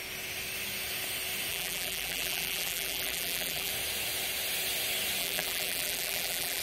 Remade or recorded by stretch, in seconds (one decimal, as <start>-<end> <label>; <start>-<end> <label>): 0.0-1.5 recorded; 1.5-3.7 remade; 3.7-5.2 recorded; 5.2-6.6 remade